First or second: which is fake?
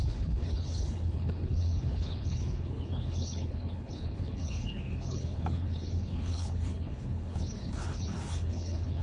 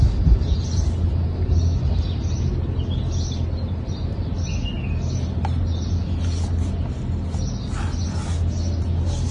first